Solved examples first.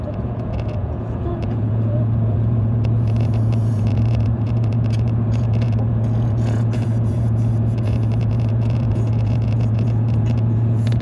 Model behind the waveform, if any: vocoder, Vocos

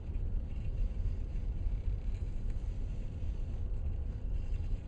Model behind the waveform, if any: vocoder, BigVGAN v2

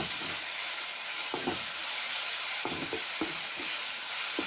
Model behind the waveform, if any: none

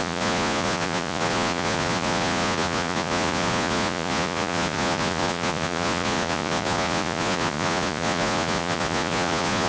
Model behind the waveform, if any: vocoder, Vocos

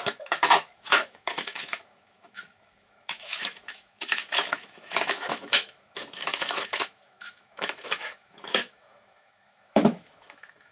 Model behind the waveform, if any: autoencoder, DAC-VAE